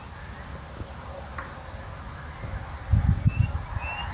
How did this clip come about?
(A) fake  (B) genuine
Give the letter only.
B